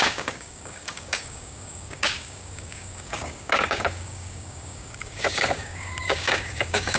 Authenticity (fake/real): fake